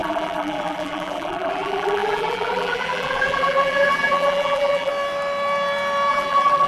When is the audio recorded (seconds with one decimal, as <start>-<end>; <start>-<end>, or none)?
4.9-6.1